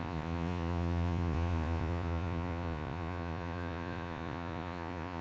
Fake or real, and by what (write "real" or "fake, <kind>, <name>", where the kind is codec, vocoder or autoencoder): fake, vocoder, Vocos